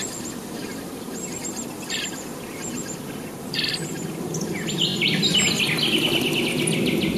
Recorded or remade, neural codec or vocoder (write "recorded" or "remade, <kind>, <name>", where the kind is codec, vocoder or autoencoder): recorded